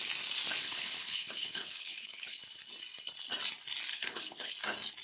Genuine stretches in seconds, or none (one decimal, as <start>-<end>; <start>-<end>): 0.0-0.6; 2.4-3.9; 4.5-5.0